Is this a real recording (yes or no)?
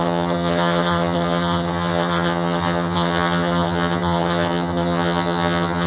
no